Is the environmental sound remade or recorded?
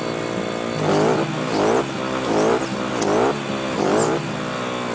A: recorded